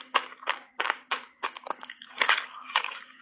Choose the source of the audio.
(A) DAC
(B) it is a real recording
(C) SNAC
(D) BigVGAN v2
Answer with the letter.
A